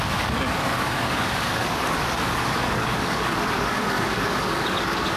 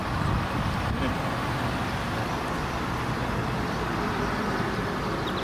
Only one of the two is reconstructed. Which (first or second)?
first